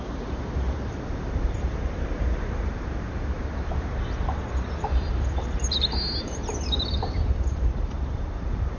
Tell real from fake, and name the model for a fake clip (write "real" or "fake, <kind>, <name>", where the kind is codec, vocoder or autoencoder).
fake, vocoder, BigVGAN v2